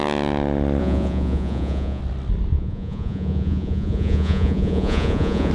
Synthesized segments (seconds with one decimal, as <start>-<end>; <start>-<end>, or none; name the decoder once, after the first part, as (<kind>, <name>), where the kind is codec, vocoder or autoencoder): 0.8-2.0 (vocoder, Vocos); 2.5-5.5